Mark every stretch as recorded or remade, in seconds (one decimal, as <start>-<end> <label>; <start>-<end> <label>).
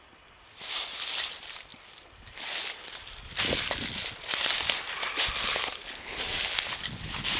0.0-5.4 recorded; 5.4-6.2 remade; 6.2-7.4 recorded